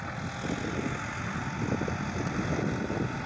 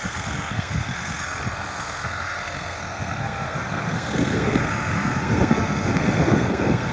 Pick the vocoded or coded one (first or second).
second